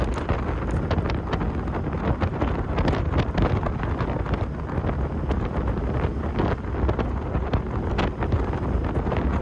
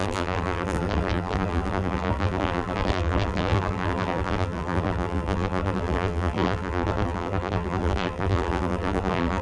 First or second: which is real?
first